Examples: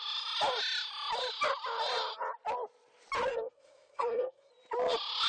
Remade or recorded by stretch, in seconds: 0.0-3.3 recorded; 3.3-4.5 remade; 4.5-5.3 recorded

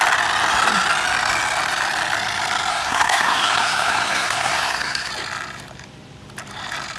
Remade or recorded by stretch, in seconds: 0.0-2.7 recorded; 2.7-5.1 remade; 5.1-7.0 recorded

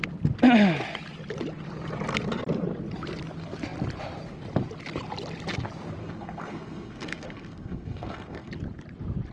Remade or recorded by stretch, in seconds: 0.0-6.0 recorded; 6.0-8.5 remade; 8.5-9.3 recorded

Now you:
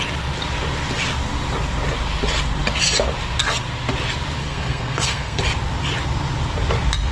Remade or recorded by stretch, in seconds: 0.0-4.4 recorded; 4.4-5.4 remade; 5.4-7.1 recorded